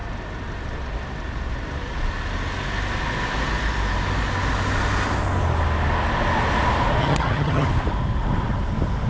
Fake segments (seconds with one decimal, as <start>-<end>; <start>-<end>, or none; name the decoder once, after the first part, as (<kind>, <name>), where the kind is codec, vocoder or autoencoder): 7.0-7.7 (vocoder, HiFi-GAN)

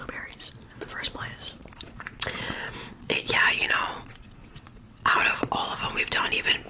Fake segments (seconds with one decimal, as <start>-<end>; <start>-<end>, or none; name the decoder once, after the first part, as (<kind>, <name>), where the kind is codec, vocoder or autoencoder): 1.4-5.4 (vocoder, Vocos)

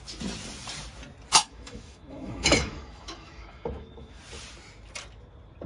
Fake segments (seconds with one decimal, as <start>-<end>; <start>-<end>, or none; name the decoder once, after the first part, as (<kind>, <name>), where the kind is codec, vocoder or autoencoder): 1.3-4.2 (autoencoder, DAC-VAE)

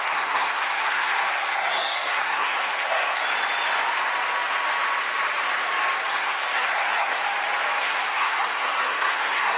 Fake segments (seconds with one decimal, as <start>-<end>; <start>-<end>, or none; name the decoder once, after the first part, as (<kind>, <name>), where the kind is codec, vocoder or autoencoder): 0.0-3.2 (codec, SNAC); 6.1-7.2; 7.8-9.6